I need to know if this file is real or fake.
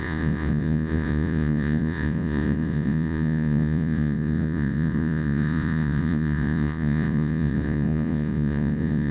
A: fake